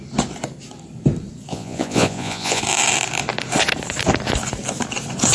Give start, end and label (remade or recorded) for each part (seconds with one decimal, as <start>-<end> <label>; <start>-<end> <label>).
0.0-1.5 recorded; 1.5-2.6 remade; 2.6-5.3 recorded